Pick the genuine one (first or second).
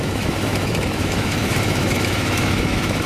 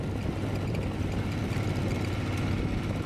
second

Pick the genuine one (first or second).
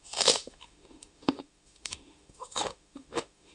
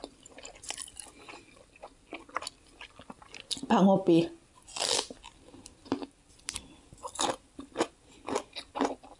second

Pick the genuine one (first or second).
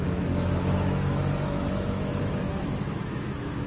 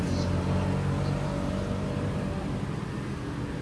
second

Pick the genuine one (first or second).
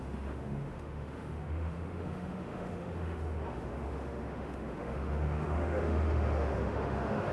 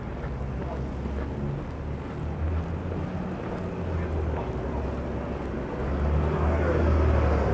second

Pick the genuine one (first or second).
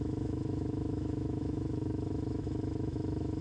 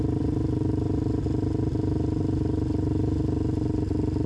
second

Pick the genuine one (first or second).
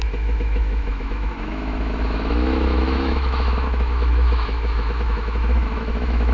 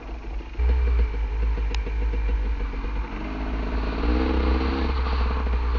second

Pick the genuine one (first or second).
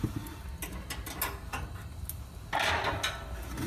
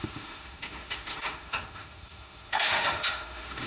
first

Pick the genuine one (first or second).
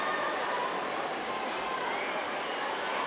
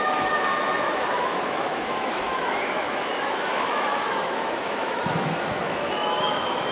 first